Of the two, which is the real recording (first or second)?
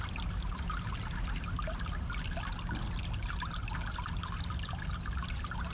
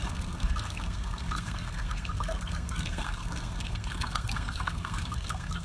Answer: first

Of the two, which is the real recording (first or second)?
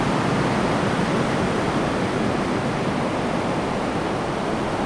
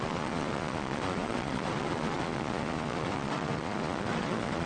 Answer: first